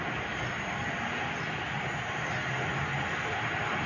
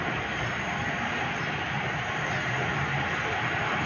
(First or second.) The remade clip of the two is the second